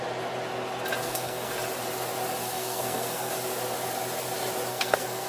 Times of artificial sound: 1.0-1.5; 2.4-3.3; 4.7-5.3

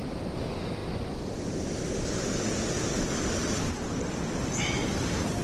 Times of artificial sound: 4.8-5.4